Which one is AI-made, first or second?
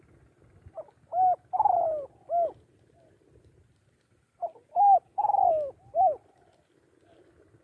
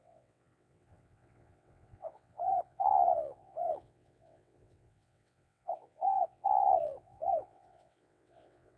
second